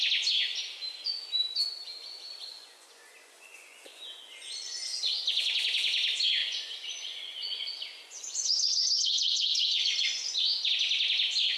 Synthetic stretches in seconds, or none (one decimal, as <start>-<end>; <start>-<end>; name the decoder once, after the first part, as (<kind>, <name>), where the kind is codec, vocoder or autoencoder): 2.5-5.1 (vocoder, Vocos); 6.4-10.7